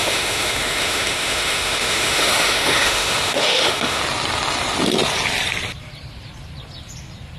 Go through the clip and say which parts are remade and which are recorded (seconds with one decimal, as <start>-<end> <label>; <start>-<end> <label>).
0.0-4.0 remade; 4.0-7.4 recorded